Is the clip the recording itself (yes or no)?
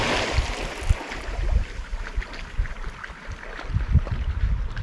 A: yes